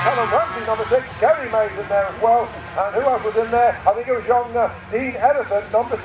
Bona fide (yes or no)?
yes